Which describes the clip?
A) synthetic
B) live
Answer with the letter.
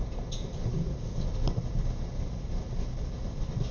B